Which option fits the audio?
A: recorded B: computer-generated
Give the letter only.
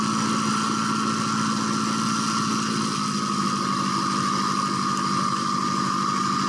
A